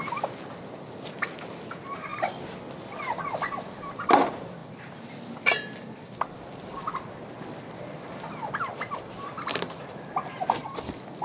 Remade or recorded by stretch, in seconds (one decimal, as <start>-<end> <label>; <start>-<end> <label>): 0.0-11.2 recorded